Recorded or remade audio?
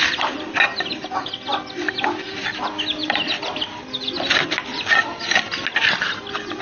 recorded